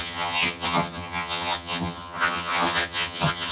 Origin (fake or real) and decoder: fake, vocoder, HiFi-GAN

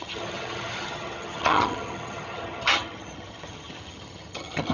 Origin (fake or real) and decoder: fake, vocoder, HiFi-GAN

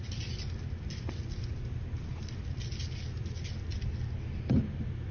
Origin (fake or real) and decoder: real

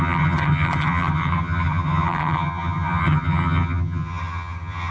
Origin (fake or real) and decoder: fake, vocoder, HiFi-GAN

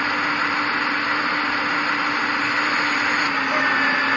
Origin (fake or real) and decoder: real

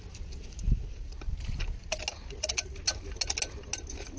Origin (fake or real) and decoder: real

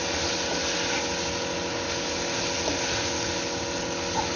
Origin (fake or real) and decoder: real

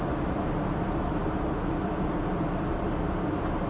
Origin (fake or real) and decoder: real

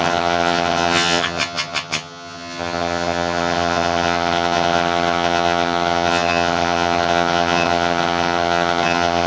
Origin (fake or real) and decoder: fake, vocoder, HiFi-GAN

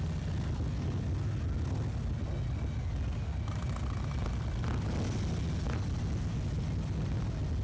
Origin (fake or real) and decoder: real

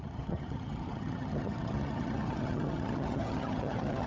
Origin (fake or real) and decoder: fake, vocoder, HiFi-GAN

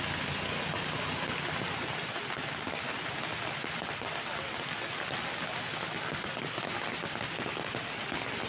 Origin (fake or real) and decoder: real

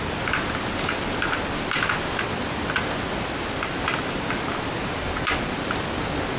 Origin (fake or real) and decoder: real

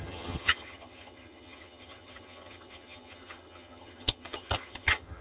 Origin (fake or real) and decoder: fake, vocoder, HiFi-GAN